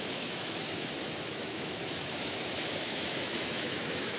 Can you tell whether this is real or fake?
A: fake